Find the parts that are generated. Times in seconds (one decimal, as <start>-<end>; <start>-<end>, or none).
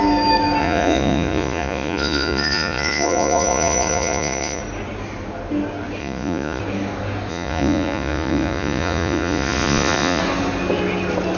0.6-4.6; 6.0-6.6; 7.3-10.2